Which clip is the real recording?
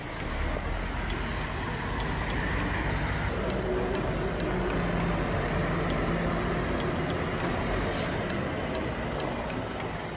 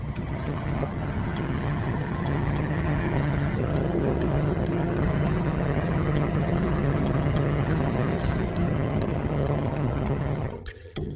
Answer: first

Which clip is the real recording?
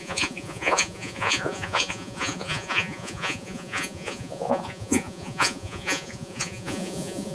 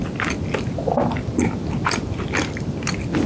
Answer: second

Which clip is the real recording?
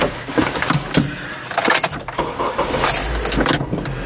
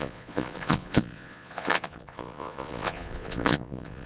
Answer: first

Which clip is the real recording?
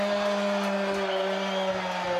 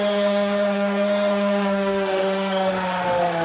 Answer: first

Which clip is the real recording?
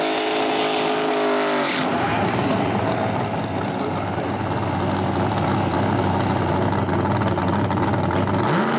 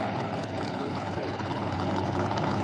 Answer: first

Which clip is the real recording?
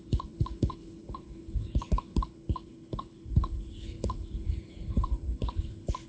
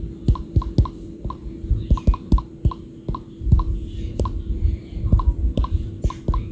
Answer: second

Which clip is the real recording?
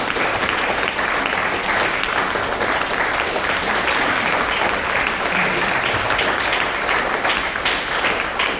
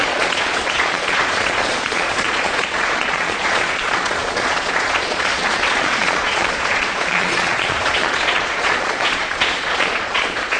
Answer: first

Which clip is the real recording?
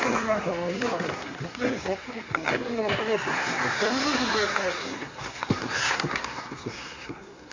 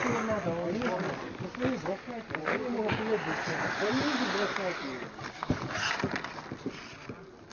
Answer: second